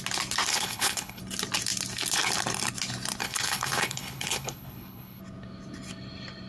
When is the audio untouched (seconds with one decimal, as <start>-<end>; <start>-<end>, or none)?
0.0-0.5; 1.2-3.2; 5.2-6.5

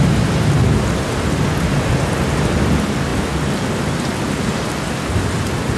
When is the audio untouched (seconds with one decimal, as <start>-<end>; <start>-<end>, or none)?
0.0-5.8

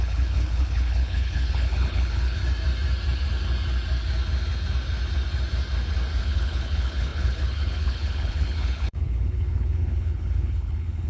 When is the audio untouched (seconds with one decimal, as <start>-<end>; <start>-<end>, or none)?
2.4-6.2

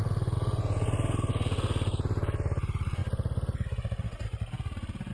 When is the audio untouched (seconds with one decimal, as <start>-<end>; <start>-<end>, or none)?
0.0-5.1

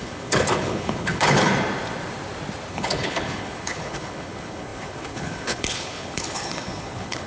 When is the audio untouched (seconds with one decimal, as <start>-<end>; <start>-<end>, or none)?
1.5-2.7

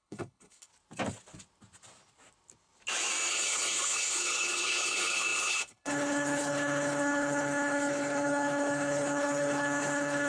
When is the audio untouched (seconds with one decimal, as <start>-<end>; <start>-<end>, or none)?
0.7-3.3

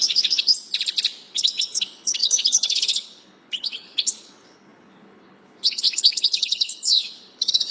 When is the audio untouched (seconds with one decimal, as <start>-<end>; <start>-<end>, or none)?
0.5-1.3